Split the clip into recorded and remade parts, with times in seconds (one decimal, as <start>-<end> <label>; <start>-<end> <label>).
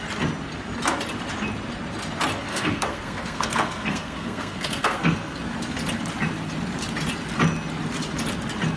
0.0-2.5 recorded; 2.5-5.4 remade; 5.4-8.8 recorded